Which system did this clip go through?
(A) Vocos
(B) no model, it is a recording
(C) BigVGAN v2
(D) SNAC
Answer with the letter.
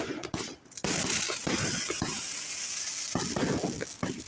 B